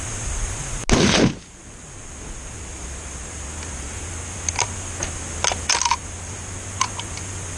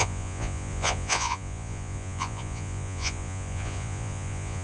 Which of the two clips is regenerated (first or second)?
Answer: second